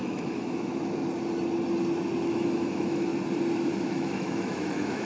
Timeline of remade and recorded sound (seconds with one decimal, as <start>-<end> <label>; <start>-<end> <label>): 0.0-0.7 remade; 0.7-2.2 recorded; 2.2-3.1 remade; 3.1-3.9 recorded; 3.9-5.1 remade